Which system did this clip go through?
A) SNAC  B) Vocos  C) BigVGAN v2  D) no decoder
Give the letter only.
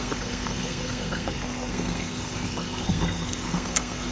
A